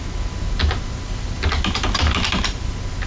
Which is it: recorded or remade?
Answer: recorded